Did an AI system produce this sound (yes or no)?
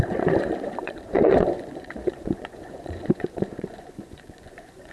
yes